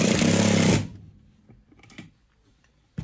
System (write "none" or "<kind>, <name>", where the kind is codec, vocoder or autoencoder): none